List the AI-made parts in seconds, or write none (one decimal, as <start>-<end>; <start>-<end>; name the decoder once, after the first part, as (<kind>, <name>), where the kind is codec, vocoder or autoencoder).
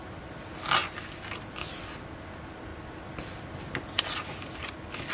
none